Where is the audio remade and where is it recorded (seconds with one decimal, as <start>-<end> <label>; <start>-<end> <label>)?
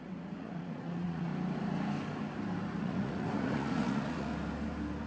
0.0-1.3 remade; 1.3-2.8 recorded; 2.8-4.3 remade; 4.3-5.1 recorded